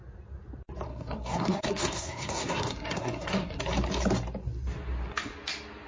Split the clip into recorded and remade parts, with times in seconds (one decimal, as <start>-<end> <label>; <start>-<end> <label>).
0.0-0.9 recorded; 0.9-3.6 remade; 3.6-5.9 recorded